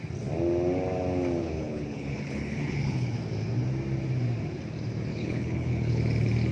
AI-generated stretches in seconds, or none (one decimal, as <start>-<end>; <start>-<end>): 1.4-3.2; 5.1-6.0